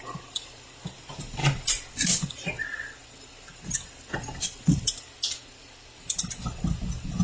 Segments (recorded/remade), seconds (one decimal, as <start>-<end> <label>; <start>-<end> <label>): 0.0-7.2 recorded